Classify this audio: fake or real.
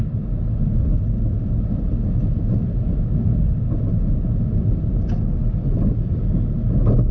real